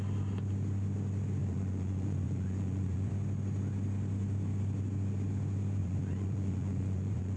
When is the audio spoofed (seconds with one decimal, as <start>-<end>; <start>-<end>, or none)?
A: 1.4-3.1; 5.8-7.4